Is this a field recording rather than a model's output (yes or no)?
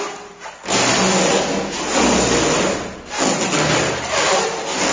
yes